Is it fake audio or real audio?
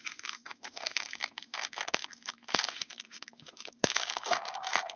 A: fake